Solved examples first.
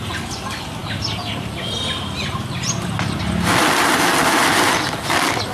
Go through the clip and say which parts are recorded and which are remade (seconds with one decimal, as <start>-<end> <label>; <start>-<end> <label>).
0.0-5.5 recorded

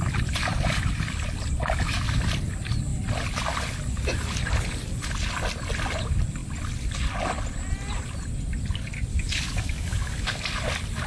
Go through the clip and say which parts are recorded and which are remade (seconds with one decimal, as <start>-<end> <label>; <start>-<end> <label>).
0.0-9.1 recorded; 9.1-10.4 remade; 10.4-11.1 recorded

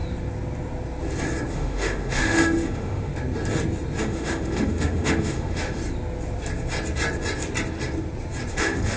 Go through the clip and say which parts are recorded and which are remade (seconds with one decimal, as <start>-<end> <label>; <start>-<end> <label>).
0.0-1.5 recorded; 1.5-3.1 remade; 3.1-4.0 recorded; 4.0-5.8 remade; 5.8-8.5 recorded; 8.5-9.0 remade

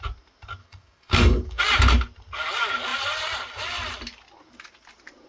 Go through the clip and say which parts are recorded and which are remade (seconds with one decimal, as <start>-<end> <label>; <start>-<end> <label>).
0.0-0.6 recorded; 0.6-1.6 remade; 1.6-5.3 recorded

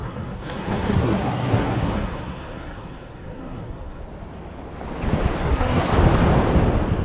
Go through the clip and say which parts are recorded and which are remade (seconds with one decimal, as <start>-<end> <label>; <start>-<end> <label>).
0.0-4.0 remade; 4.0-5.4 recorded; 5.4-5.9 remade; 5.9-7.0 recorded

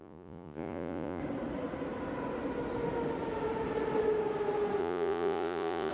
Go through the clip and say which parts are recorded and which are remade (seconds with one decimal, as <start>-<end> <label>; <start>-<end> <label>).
0.0-1.2 remade; 1.2-4.8 recorded; 4.8-5.9 remade